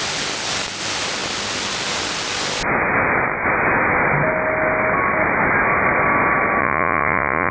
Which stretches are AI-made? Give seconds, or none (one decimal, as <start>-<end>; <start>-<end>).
6.6-7.5